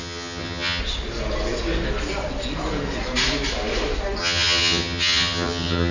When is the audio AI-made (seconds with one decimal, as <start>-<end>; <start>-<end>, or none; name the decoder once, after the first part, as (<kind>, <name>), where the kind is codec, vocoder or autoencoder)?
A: 0.0-0.8 (vocoder, HiFi-GAN); 4.2-5.9

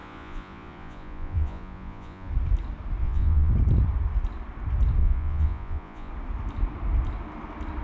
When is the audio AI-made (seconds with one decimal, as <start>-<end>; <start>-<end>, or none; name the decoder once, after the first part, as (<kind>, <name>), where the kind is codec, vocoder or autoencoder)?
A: 0.0-2.3 (vocoder, Vocos); 3.0-3.5; 5.0-6.1

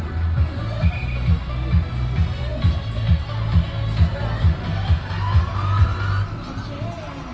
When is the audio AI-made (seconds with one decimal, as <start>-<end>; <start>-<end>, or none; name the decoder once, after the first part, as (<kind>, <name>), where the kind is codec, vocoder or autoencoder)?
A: none